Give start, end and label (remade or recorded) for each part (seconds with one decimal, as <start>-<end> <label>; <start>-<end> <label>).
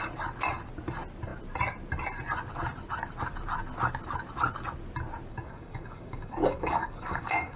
0.0-5.3 recorded; 5.3-7.6 remade